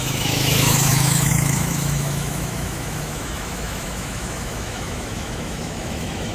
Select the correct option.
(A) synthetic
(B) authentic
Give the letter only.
A